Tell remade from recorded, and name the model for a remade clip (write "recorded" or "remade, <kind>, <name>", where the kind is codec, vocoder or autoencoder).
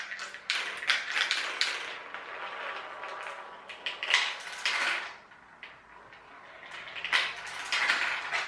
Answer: recorded